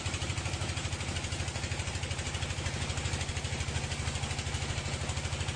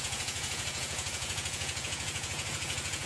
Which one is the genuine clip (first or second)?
first